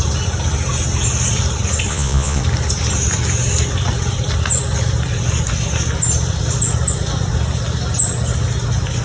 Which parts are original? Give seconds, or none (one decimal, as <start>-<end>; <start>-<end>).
0.0-1.9; 2.4-9.0